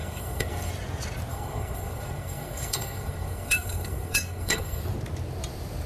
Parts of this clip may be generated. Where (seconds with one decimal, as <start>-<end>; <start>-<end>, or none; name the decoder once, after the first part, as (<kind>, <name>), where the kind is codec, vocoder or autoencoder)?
0.0-0.7 (codec, SNAC); 1.3-4.8